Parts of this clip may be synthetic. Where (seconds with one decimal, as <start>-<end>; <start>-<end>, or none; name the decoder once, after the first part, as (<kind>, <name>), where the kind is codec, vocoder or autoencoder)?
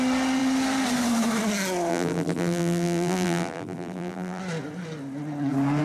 1.9-4.4 (vocoder, BigVGAN v2)